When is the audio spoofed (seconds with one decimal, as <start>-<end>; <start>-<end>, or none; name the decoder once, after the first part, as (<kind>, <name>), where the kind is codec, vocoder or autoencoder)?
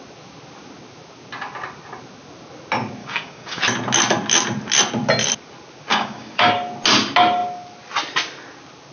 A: 3.0-3.6 (codec, DAC); 5.9-6.5